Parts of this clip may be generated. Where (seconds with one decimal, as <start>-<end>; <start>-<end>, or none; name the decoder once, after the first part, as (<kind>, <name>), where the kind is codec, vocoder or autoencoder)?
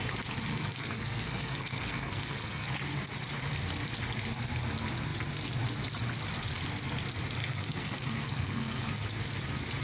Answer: 0.5-2.7 (codec, SNAC); 7.4-8.9